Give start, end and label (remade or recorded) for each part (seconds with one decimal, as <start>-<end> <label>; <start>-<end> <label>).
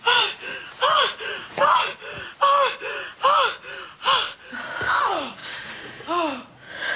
0.0-1.9 remade; 1.9-5.0 recorded; 5.0-7.0 remade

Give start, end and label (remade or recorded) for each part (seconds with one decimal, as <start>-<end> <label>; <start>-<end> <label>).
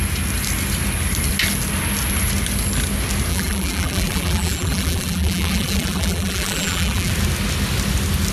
0.0-3.3 recorded; 3.3-7.1 remade; 7.1-8.3 recorded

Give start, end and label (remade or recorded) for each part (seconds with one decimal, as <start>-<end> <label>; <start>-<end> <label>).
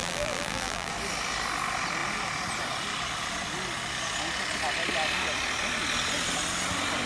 0.0-0.9 remade; 0.9-7.1 recorded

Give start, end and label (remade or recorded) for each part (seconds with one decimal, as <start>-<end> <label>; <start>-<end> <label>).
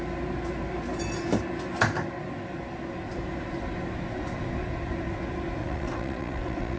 0.0-5.6 recorded; 5.6-6.8 remade